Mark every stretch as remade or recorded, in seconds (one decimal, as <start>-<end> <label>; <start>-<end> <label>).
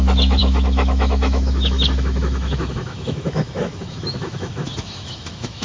0.0-5.6 remade